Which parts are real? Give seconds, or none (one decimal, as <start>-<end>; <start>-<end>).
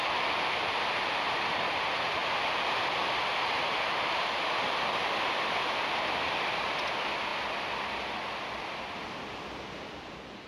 0.0-10.5